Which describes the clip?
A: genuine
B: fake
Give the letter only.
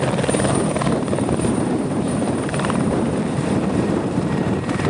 B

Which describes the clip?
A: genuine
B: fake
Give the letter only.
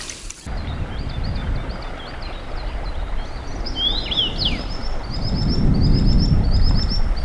A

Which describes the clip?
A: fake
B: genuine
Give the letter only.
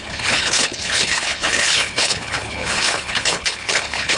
A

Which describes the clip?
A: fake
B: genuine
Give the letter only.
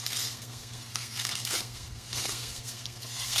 A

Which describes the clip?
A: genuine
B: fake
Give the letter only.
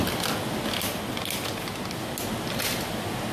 A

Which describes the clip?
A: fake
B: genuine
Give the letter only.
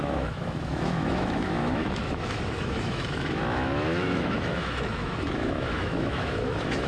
A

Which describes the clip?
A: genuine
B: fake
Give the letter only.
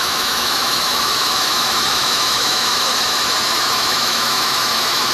B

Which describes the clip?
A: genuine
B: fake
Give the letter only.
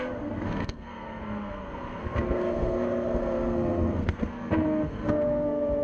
B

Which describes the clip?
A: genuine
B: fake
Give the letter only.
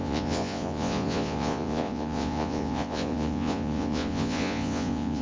B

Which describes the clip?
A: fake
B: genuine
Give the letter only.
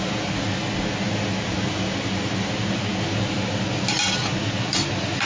B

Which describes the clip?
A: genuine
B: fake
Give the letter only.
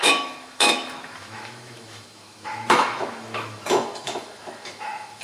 B